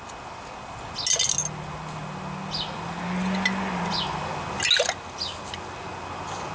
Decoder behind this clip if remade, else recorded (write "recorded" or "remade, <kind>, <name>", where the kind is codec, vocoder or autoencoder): recorded